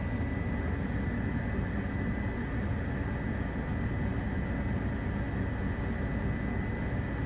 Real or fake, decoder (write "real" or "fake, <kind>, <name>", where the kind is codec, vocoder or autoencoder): real